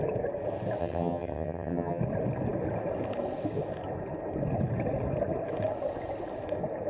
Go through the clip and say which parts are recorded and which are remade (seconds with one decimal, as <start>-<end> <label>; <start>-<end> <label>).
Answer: 0.0-0.8 recorded; 0.8-2.0 remade; 2.0-6.9 recorded